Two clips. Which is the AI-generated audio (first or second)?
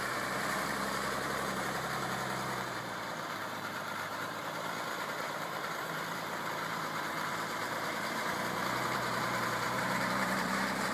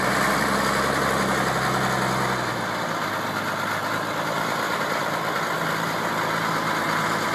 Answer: first